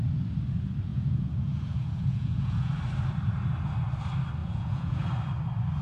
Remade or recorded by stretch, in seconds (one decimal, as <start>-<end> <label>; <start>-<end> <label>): 0.0-0.9 recorded; 0.9-2.7 remade; 2.7-4.4 recorded; 4.4-5.1 remade; 5.1-5.8 recorded